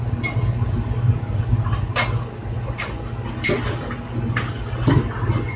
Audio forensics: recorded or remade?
recorded